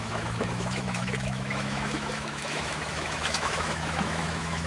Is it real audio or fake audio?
fake